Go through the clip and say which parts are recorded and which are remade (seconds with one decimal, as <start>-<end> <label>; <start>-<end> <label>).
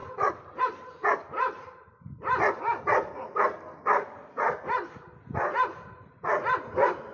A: 0.0-0.6 remade; 0.6-7.1 recorded